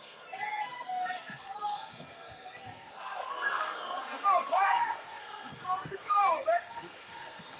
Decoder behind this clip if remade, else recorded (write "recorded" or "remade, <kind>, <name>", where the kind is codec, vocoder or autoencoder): remade, codec, SNAC